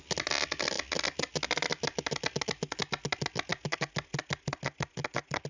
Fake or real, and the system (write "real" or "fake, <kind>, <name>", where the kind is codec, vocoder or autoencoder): real